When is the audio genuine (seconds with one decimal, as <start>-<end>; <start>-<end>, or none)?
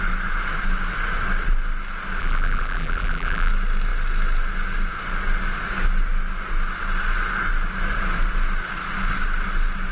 0.0-2.2; 3.5-9.9